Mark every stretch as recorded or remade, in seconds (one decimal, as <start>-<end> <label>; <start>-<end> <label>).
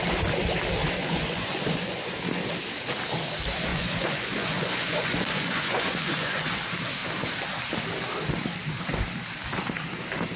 0.0-1.0 recorded; 1.0-2.1 remade; 2.1-3.7 recorded; 3.7-6.5 remade; 6.5-10.4 recorded